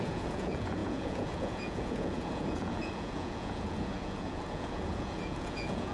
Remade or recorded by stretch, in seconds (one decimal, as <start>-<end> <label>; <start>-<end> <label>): 0.0-5.9 remade